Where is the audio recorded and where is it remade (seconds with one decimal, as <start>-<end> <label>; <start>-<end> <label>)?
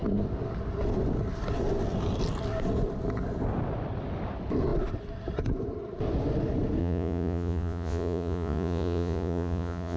0.0-6.8 recorded; 6.8-10.0 remade